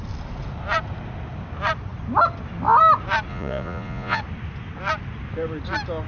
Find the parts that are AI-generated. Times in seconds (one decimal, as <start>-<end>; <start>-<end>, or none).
3.3-4.2